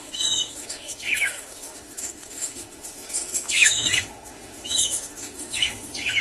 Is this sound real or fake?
fake